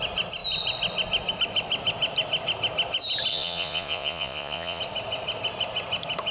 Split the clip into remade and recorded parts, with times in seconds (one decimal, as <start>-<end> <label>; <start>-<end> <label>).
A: 0.0-3.3 recorded; 3.3-4.8 remade; 4.8-6.3 recorded